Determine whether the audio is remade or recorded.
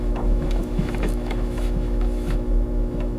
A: remade